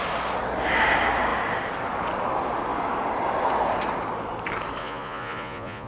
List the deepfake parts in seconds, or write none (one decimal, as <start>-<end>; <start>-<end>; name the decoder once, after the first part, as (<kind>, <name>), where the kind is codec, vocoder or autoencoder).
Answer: 4.8-5.9 (vocoder, Vocos)